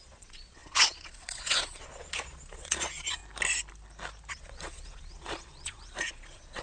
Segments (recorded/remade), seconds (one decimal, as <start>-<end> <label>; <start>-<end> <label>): 0.0-3.2 remade; 3.2-4.3 recorded; 4.3-6.6 remade